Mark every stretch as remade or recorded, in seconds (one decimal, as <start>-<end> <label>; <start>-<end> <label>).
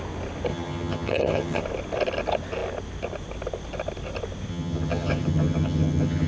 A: 0.0-0.5 recorded; 0.5-1.6 remade; 1.6-4.5 recorded; 4.5-6.3 remade